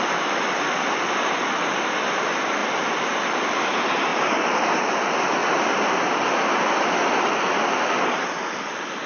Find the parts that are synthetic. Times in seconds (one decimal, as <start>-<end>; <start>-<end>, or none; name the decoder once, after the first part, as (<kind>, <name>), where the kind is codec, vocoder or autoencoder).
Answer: 4.1-4.7 (vocoder, BigVGAN v2); 5.4-9.1